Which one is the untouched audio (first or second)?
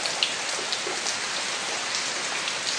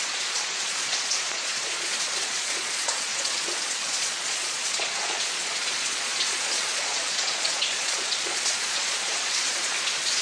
first